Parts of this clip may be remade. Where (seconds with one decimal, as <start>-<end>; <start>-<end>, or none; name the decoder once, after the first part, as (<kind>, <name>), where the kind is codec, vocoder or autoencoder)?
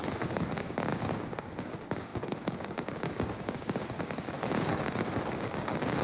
0.0-6.0 (codec, DAC)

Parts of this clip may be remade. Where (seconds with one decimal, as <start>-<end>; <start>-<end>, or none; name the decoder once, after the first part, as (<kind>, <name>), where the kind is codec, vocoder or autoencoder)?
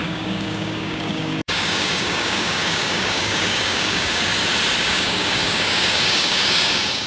0.0-4.3 (codec, DAC); 4.8-7.1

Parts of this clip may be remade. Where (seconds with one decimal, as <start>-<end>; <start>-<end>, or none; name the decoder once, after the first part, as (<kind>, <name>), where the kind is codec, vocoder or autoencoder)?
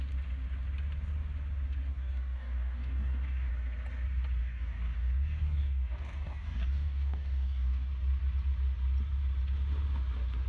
1.9-3.5 (codec, DAC); 4.4-7.9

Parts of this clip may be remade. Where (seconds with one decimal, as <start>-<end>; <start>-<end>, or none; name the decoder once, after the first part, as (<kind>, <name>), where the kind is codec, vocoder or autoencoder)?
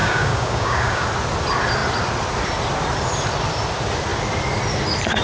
0.0-1.0 (codec, DAC)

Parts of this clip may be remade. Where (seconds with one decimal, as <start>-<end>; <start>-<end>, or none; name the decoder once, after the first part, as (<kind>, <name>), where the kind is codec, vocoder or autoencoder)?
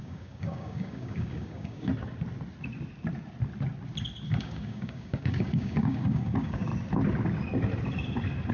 0.0-1.9 (codec, DAC); 4.4-6.7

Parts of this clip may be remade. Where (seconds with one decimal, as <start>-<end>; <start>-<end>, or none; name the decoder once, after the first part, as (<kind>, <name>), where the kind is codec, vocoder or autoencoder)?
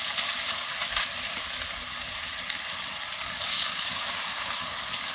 3.1-5.1 (codec, DAC)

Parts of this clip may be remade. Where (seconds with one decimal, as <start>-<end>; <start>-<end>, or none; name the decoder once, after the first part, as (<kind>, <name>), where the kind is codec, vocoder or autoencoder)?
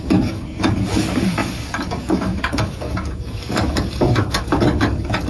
0.0-5.3 (codec, DAC)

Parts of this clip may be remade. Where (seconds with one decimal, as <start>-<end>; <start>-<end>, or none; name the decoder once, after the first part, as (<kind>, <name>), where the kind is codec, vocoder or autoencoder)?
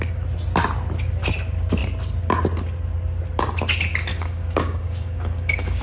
4.1-5.8 (codec, DAC)